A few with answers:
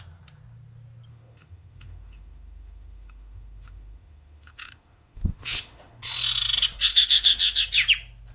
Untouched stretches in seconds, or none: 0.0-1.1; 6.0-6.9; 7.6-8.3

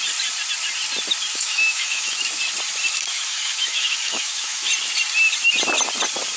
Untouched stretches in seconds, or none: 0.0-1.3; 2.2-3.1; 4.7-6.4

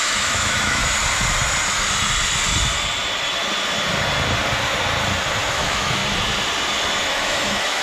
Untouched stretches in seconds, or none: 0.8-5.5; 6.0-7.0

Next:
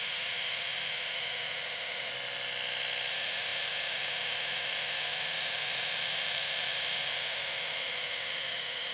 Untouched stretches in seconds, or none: 2.1-3.1

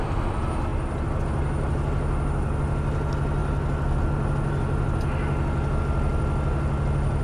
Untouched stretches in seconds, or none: 0.0-7.2

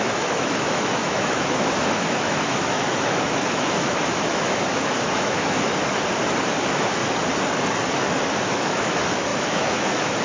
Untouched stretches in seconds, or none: 5.7-6.6; 7.0-8.3